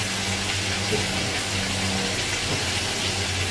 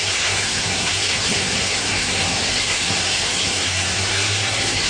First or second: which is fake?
second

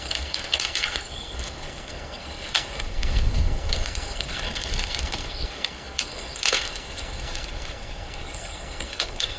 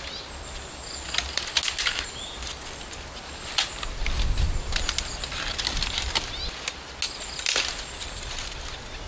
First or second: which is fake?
first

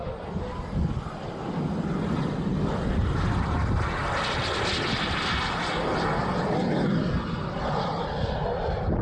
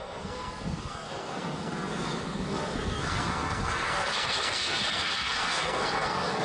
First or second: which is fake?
second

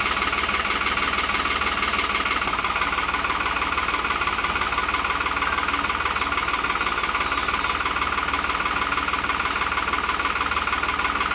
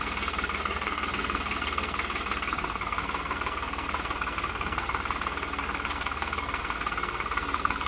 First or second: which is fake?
second